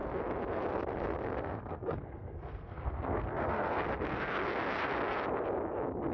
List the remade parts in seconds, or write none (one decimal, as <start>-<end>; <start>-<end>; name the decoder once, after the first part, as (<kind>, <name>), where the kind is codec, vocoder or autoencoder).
1.4-3.7 (codec, SNAC)